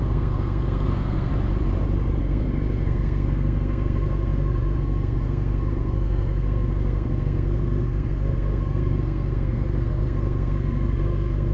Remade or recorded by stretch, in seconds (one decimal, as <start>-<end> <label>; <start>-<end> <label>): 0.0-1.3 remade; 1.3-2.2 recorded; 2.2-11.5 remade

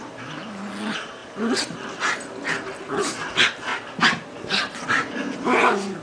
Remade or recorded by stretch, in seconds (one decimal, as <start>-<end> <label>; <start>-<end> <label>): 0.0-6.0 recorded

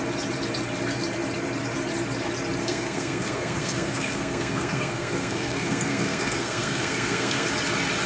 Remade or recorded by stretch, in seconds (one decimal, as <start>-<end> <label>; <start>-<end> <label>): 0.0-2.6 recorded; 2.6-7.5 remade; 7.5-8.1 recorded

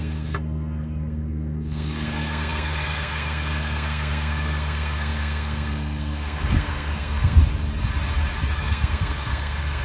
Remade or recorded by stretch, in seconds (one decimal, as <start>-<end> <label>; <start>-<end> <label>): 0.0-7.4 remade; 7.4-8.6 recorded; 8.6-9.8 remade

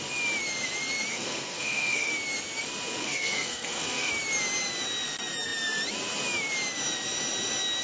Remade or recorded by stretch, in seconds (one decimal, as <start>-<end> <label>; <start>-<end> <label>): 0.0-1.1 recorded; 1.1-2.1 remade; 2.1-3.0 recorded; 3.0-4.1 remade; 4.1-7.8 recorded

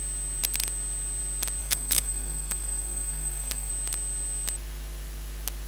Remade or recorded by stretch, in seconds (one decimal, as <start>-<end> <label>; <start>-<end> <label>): 0.0-1.6 recorded; 1.6-3.7 remade; 3.7-5.7 recorded